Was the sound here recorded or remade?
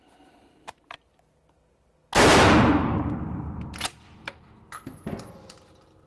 recorded